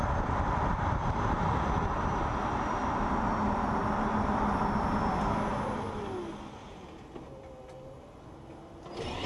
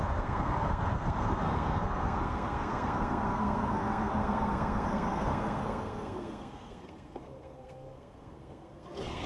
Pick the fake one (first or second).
second